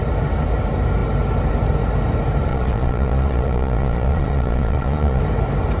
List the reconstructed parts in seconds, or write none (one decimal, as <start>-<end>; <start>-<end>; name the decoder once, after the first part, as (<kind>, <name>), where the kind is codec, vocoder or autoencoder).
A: 2.5-5.2 (vocoder, Vocos)